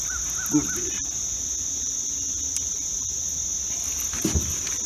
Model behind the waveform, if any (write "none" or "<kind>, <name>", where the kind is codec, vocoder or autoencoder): none